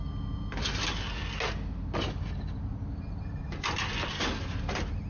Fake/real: real